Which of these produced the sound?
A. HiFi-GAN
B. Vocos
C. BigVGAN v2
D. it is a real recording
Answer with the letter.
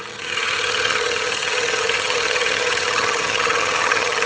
A